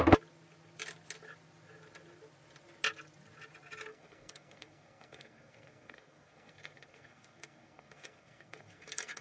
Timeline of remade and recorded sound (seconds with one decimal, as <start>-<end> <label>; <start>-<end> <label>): 0.0-3.9 recorded; 3.9-9.2 remade